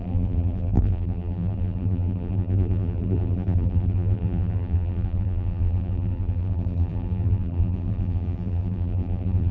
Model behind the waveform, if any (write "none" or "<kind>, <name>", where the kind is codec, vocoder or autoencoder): vocoder, BigVGAN v2